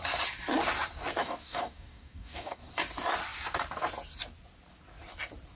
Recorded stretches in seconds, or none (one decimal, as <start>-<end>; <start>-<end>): 0.0-1.2; 2.7-5.6